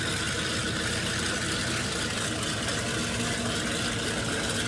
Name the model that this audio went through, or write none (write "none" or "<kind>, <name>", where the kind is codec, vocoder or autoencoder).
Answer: none